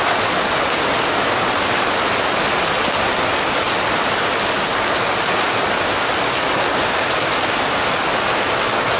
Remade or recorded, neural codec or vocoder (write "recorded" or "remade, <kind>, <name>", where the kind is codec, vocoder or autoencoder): recorded